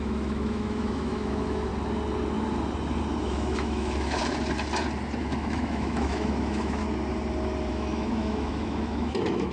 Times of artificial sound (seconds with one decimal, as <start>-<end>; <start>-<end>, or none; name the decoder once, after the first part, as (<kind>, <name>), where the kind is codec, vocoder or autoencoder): 0.0-1.7 (autoencoder, DAC-VAE); 3.2-4.2; 5.2-6.8; 7.7-9.5